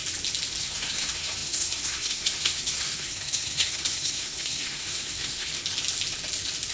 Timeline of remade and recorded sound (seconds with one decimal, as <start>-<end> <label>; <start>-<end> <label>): 0.0-0.6 recorded; 0.6-5.5 remade; 5.5-6.7 recorded